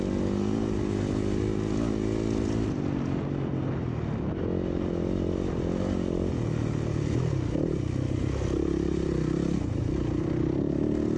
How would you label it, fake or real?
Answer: real